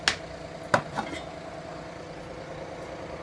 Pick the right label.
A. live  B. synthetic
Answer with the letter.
A